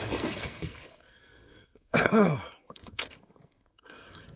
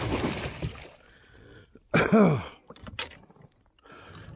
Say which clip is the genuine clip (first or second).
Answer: second